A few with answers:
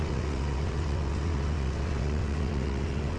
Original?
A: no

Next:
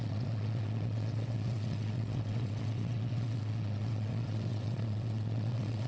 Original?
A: no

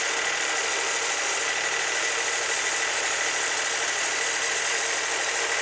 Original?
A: yes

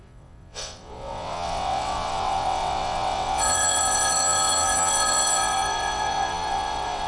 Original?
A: no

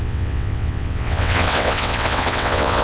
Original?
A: no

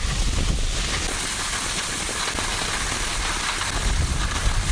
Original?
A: yes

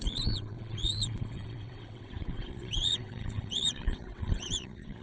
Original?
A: no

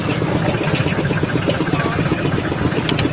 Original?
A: yes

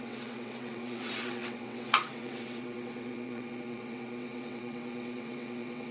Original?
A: no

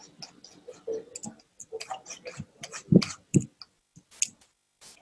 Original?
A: yes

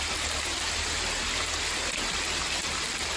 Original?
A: yes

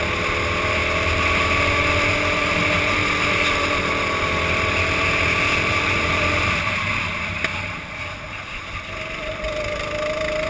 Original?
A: yes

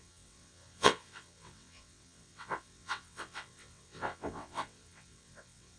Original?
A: no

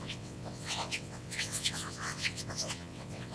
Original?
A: no